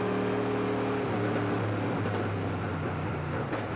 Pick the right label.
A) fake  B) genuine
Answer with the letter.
B